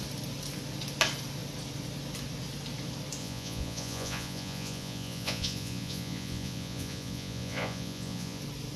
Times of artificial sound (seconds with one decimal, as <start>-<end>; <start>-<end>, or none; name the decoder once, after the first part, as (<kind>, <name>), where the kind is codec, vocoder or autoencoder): 3.2-8.4 (vocoder, Vocos)

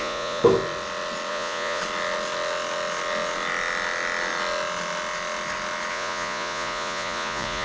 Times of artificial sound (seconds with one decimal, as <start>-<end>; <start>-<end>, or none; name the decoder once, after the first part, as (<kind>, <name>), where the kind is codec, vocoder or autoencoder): 0.0-0.4 (vocoder, Vocos); 1.3-1.8; 5.9-7.6

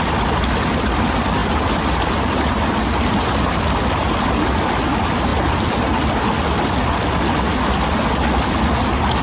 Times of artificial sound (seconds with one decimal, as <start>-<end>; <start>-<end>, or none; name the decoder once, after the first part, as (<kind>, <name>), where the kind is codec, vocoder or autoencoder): none

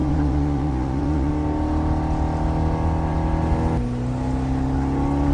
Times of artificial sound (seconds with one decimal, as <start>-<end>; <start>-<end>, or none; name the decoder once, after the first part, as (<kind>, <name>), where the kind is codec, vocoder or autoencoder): 0.0-1.3 (vocoder, Vocos)